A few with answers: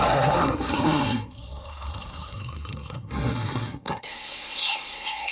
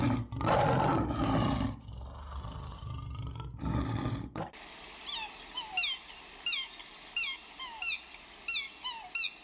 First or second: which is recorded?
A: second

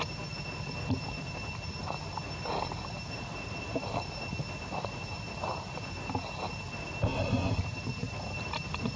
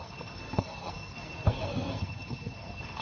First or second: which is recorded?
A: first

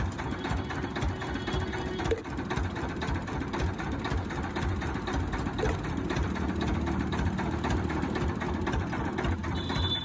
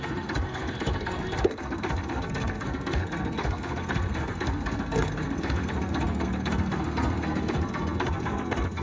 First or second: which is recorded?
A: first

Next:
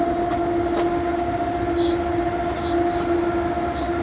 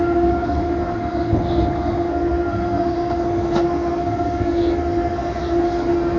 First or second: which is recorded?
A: first